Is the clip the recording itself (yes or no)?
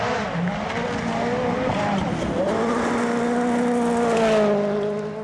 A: yes